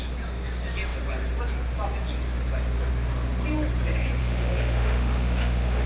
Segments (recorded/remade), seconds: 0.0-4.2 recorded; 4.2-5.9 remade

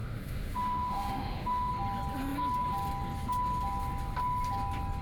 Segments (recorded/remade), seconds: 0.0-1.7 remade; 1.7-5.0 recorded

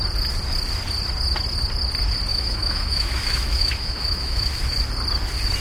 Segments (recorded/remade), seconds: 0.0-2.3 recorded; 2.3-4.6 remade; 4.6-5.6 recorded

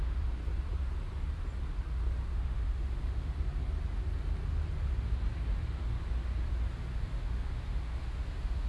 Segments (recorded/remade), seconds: 0.0-2.3 recorded; 2.3-3.3 remade; 3.3-6.9 recorded; 6.9-8.7 remade

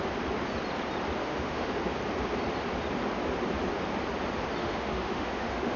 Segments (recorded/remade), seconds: 0.0-1.2 recorded; 1.2-1.8 remade; 1.8-4.6 recorded; 4.6-5.8 remade